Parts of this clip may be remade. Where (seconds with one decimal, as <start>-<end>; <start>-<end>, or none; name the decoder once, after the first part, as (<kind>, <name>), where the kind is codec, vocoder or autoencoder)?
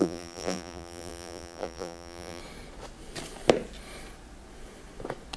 0.0-2.4 (vocoder, BigVGAN v2)